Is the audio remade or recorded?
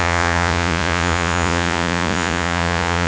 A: remade